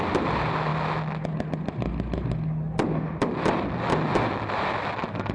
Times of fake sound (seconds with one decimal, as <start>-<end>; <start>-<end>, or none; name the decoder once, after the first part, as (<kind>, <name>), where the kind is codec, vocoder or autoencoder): none